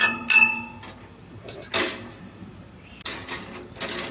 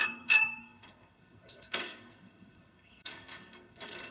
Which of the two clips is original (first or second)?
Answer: first